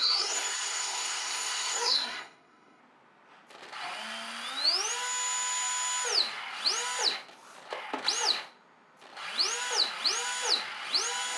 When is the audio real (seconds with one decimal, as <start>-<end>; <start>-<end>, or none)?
2.8-11.4